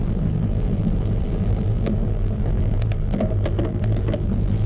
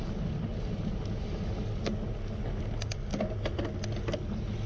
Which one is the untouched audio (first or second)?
second